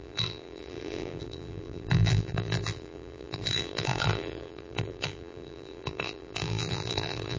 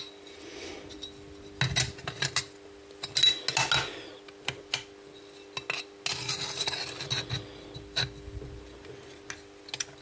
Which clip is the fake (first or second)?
first